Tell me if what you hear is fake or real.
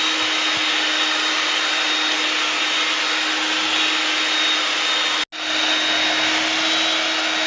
real